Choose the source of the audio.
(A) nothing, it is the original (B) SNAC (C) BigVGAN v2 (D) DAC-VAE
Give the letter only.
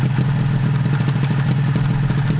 A